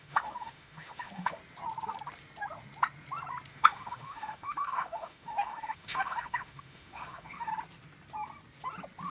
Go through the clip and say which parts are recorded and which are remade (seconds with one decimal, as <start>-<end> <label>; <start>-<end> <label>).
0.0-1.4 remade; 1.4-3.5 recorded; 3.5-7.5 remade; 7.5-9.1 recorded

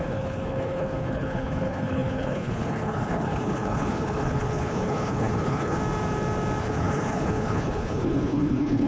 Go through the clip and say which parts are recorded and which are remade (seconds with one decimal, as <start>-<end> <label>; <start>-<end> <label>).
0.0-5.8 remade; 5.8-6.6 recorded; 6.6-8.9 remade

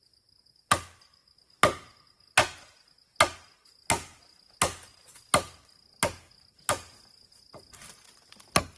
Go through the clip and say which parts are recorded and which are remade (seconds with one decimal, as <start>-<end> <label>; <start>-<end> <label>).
0.0-8.8 recorded

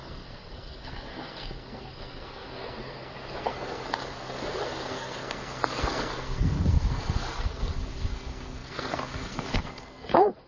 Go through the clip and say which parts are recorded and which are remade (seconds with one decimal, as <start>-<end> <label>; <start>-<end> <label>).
0.0-10.5 remade